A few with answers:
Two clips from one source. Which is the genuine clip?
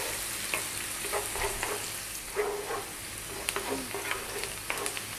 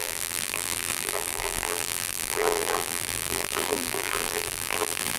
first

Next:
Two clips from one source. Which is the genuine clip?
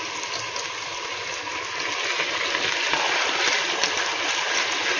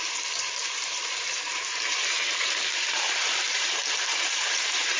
first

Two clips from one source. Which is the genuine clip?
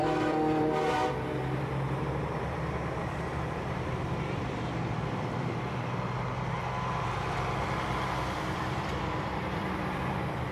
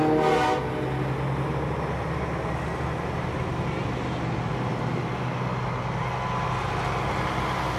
second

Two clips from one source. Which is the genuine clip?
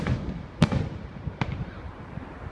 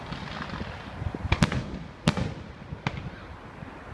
second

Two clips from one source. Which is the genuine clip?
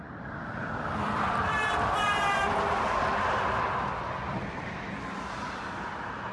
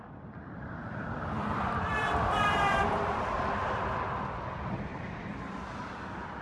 first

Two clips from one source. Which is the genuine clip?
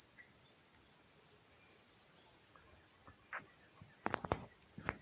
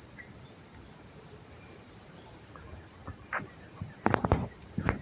first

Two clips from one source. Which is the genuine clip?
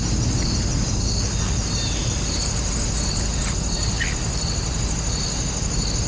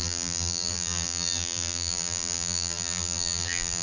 first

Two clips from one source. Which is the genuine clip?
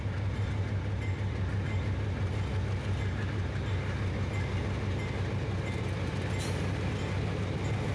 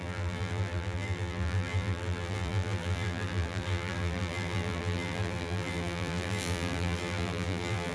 first